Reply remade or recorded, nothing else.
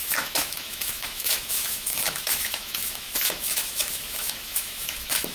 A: remade